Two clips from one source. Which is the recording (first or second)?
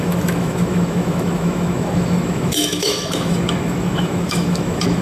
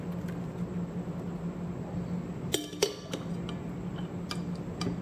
second